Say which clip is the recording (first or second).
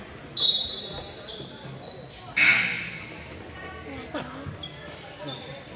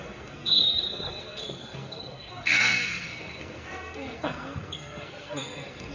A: first